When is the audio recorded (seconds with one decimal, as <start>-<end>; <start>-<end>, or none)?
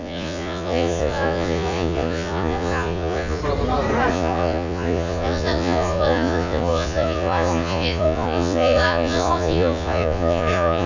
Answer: 3.4-4.1